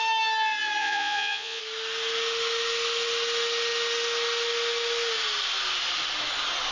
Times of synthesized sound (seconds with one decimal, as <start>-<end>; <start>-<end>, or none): 0.8-1.6